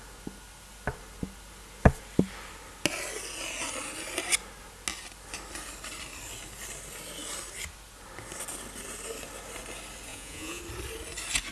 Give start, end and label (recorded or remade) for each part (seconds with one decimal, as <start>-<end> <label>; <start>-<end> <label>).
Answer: 0.0-10.1 recorded; 10.1-10.6 remade; 10.6-11.5 recorded